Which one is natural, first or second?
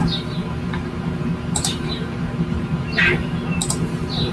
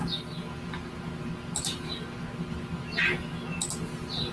second